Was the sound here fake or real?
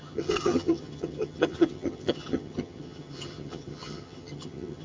fake